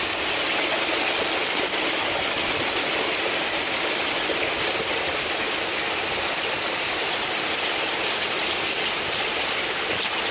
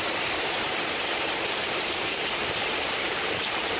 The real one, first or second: first